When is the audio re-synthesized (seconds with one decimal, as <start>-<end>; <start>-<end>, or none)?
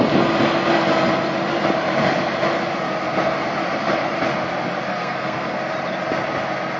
4.9-5.6